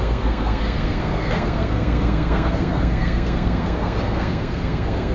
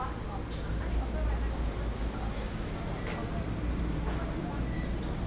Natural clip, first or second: second